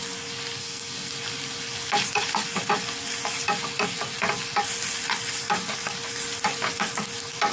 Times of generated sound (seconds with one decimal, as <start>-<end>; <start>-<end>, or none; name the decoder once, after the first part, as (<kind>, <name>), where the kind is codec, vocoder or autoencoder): 0.6-1.1 (codec, SNAC)